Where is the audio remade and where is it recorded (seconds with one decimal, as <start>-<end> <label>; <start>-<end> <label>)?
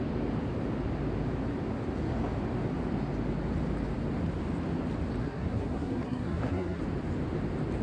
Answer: 0.0-5.2 recorded; 5.2-6.8 remade; 6.8-7.8 recorded